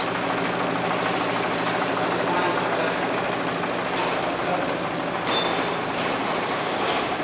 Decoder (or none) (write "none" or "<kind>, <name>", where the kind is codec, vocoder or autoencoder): none